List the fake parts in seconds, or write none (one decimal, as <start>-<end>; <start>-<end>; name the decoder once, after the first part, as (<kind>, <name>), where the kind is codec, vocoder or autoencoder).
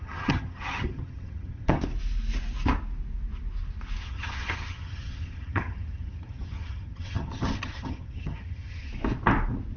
0.0-1.8 (vocoder, HiFi-GAN); 4.0-8.9